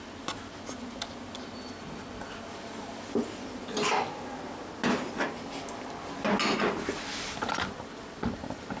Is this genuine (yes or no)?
yes